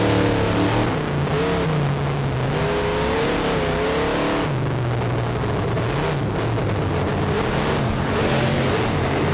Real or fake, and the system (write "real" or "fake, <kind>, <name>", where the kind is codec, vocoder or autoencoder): real